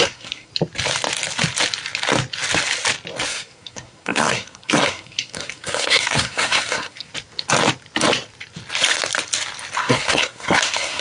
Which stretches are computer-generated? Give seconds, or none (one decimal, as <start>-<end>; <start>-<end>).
0.0-0.5; 3.3-7.1; 9.8-11.0